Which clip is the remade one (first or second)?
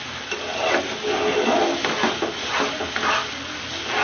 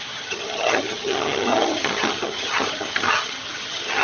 second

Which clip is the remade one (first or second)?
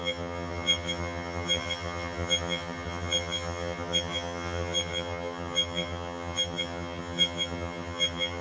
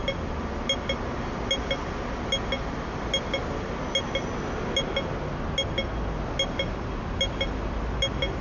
first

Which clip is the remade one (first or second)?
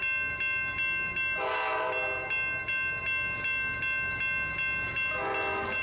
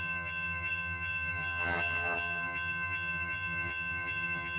second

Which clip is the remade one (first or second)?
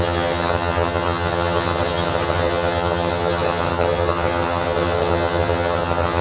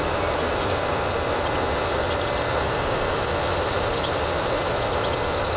first